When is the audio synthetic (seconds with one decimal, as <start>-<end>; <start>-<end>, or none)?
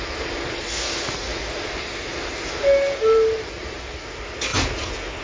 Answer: 1.3-4.0